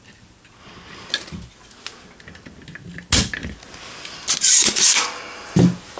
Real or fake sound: real